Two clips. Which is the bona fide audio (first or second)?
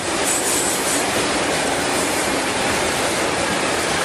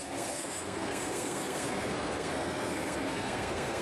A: first